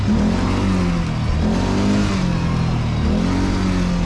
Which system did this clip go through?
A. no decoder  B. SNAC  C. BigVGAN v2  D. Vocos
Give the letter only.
A